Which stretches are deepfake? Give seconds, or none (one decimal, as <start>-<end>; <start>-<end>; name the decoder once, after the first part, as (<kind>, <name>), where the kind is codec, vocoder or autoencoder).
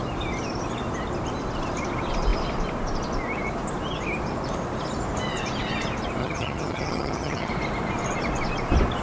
6.2-7.5 (vocoder, HiFi-GAN)